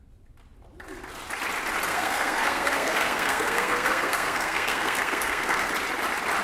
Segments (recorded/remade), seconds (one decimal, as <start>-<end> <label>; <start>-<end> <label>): 0.0-1.9 recorded; 1.9-5.7 remade; 5.7-6.4 recorded